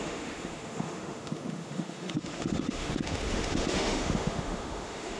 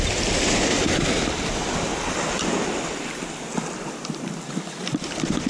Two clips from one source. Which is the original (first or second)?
second